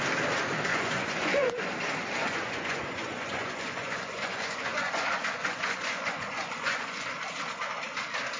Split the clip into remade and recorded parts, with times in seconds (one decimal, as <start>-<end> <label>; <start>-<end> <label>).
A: 0.0-0.7 recorded; 0.7-1.7 remade; 1.7-2.2 recorded; 2.2-7.2 remade; 7.2-8.4 recorded